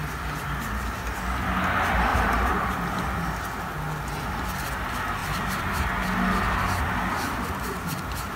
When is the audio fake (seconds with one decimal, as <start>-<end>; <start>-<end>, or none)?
2.1-3.0; 5.2-5.7